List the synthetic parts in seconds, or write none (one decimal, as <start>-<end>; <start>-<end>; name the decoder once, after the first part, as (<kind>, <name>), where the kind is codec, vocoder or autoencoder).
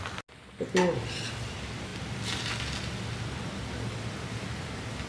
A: none